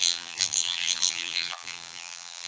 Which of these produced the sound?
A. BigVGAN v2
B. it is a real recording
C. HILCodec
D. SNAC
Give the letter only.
A